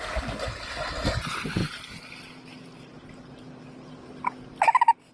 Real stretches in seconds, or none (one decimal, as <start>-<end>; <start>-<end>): 0.0-5.1